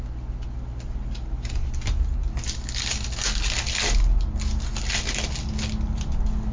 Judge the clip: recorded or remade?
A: recorded